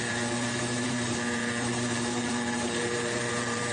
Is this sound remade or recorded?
remade